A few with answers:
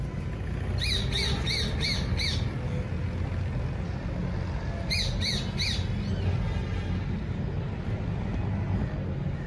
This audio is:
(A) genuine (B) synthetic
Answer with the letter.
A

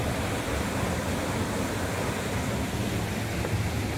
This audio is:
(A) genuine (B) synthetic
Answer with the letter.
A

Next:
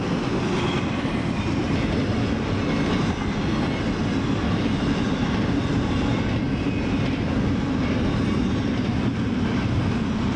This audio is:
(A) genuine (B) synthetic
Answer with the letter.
A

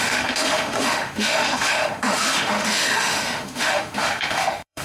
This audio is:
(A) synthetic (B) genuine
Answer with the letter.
A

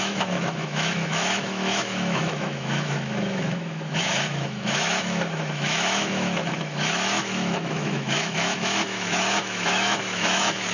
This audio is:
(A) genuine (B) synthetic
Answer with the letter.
B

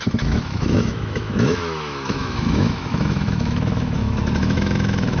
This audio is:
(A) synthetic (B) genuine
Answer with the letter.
A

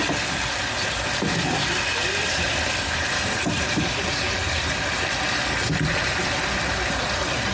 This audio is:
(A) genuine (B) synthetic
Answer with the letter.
A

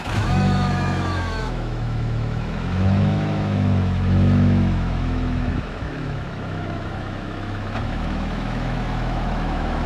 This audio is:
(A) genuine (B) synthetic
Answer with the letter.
B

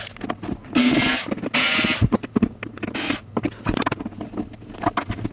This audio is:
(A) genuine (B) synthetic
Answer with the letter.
A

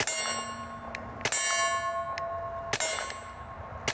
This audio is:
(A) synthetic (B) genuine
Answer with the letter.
B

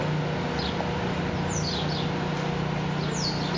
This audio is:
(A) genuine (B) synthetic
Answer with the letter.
A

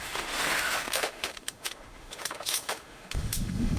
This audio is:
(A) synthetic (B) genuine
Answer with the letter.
A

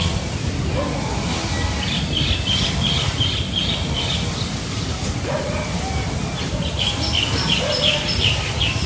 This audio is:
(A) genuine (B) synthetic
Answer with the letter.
A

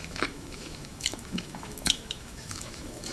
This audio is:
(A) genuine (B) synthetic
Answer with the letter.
B